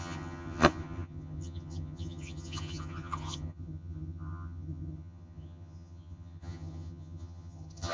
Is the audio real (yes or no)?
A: no